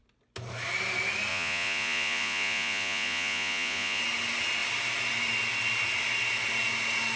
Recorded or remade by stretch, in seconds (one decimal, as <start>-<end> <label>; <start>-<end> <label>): 0.0-1.3 recorded; 1.3-4.0 remade; 4.0-7.2 recorded